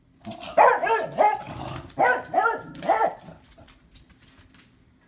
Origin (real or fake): real